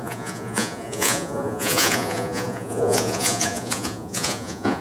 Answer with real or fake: fake